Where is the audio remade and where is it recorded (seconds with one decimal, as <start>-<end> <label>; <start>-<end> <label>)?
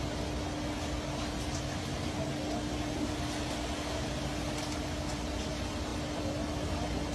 0.0-7.1 recorded